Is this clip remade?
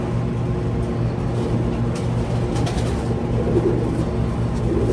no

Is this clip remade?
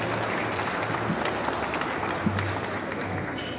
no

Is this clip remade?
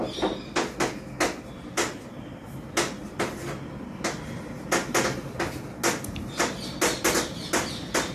no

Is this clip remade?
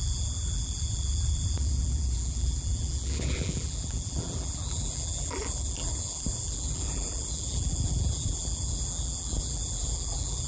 yes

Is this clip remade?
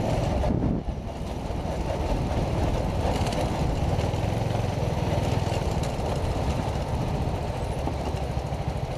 no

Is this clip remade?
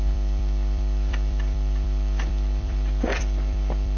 yes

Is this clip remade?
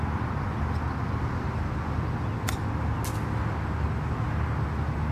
no